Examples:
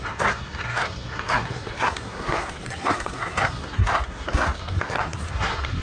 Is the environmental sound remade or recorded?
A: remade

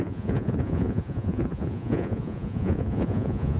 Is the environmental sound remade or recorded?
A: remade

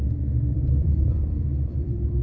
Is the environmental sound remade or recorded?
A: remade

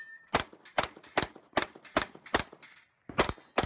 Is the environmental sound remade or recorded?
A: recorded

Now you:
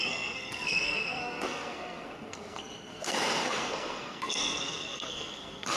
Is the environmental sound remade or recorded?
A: remade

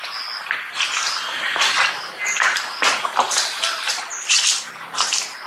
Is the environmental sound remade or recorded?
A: recorded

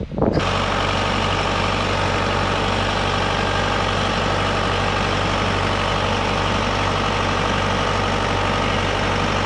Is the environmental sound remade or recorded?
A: recorded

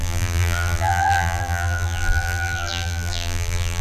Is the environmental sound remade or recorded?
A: remade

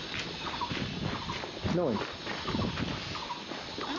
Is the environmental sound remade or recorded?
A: recorded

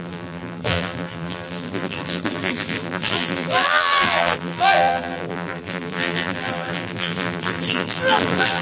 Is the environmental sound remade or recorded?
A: remade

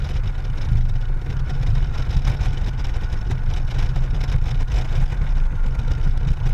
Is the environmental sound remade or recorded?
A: recorded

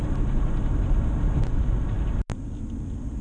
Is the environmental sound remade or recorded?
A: recorded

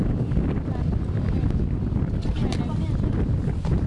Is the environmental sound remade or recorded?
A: recorded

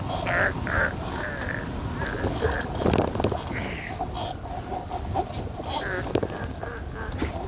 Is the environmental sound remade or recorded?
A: recorded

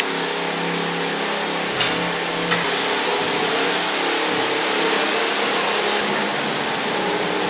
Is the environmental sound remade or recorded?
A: recorded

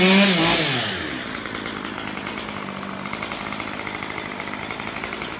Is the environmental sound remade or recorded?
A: recorded